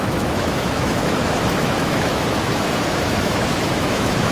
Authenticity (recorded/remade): remade